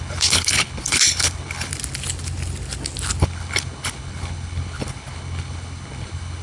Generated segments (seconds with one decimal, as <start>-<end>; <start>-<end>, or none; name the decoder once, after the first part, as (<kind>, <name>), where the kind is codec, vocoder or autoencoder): 0.0-1.7 (codec, HILCodec); 3.2-6.4